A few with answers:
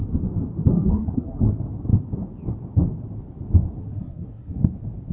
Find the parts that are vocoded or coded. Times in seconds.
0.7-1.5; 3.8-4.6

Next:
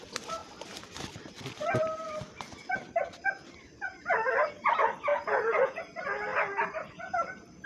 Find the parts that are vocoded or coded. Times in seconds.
5.1-5.8

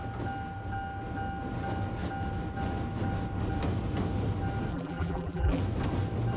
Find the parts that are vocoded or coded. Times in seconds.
4.7-5.6

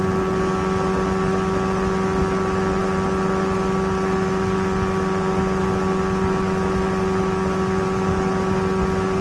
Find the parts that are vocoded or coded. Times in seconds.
none

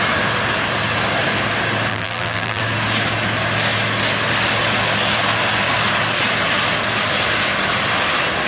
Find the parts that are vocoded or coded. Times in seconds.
1.9-2.6

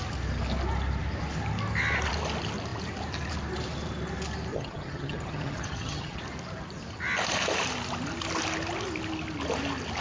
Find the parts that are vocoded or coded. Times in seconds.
4.5-6.2

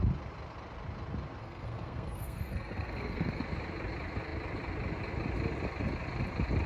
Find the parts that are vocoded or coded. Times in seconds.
1.4-3.4